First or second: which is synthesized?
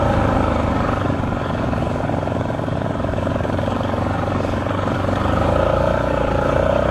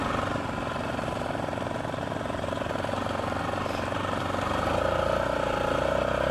first